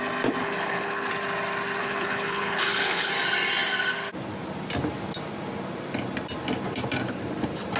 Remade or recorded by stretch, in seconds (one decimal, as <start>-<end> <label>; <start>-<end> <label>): 0.0-0.4 recorded; 0.4-1.1 remade; 1.1-1.8 recorded; 1.8-3.1 remade; 3.1-7.8 recorded